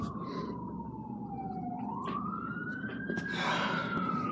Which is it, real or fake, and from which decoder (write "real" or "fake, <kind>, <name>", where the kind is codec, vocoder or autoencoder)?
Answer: real